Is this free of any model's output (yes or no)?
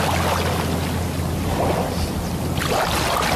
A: yes